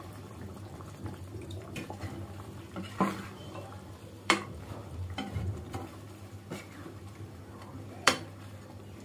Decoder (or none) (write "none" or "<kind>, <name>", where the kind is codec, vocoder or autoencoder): vocoder, BigVGAN v2